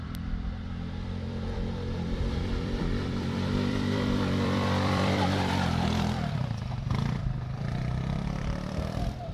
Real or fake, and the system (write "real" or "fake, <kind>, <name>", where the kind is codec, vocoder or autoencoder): fake, vocoder, BigVGAN v2